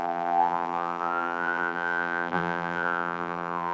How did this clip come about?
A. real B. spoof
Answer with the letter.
B